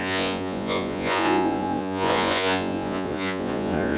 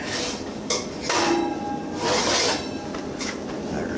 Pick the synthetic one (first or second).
first